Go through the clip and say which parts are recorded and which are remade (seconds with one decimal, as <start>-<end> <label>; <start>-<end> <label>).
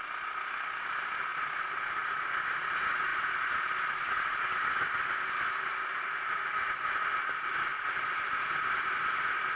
0.0-1.3 recorded; 1.3-1.9 remade; 1.9-7.7 recorded; 7.7-8.3 remade; 8.3-9.6 recorded